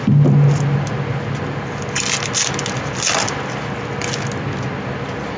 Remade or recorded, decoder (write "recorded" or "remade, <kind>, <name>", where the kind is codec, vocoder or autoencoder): recorded